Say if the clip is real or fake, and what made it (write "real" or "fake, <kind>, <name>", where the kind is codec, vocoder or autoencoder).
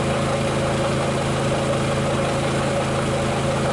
real